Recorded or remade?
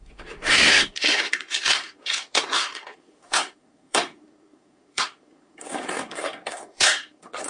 remade